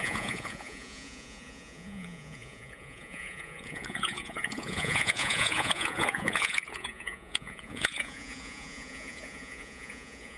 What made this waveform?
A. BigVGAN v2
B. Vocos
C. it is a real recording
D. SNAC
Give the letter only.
B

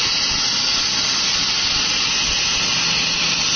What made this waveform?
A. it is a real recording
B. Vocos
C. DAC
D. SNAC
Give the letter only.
A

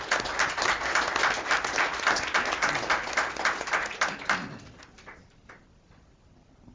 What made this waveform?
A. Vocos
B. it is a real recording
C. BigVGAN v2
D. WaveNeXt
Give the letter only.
B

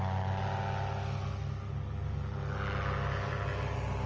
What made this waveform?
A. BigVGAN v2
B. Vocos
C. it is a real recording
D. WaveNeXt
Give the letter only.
C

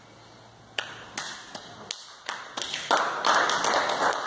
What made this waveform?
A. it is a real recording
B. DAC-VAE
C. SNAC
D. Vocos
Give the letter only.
A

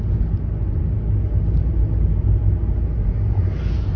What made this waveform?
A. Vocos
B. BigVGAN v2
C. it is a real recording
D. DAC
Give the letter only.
C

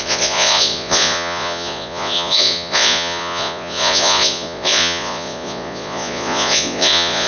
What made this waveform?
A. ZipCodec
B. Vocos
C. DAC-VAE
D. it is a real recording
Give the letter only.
B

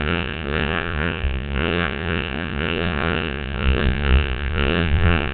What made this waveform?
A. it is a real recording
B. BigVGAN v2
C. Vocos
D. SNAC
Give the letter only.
C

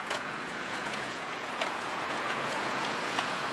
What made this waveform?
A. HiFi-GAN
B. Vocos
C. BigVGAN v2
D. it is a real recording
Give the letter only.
B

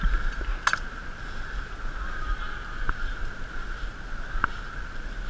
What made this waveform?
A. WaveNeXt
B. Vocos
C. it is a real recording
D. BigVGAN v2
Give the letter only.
C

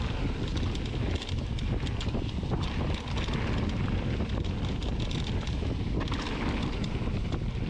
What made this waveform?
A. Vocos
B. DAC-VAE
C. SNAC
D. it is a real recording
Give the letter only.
D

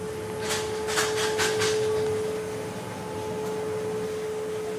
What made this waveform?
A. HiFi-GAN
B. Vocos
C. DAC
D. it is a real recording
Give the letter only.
D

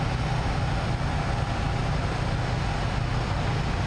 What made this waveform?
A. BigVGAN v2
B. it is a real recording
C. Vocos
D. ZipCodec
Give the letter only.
B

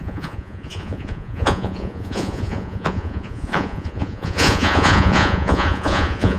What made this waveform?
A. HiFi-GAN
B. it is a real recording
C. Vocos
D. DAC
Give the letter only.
C